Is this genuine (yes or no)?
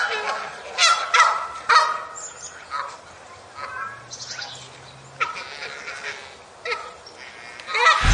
yes